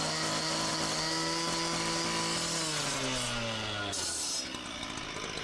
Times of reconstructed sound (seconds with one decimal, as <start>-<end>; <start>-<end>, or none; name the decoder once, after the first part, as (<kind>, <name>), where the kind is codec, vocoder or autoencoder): none